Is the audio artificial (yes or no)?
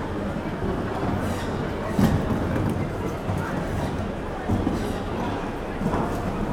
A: no